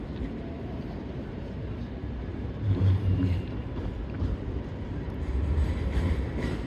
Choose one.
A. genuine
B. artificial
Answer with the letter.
B